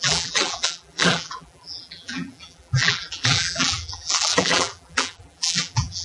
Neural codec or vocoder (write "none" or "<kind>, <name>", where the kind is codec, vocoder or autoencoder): vocoder, BigVGAN v2